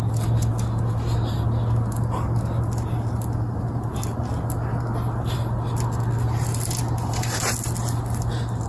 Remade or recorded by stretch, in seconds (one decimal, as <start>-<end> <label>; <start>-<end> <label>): 0.0-8.7 recorded